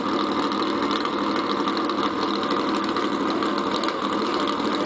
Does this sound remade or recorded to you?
recorded